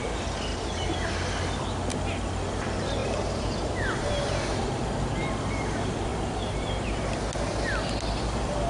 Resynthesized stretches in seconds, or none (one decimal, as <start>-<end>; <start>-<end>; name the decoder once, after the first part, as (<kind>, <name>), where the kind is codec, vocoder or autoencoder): 0.5-1.1 (vocoder, BigVGAN v2); 3.0-5.2; 6.1-6.7